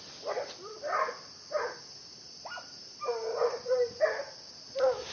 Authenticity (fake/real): real